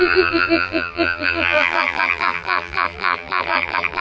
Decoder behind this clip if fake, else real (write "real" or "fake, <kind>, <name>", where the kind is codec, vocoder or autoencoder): fake, vocoder, BigVGAN v2